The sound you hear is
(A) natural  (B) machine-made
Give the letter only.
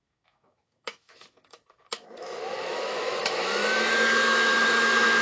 B